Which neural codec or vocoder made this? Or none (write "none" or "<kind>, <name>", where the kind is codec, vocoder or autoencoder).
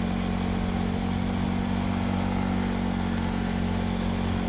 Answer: none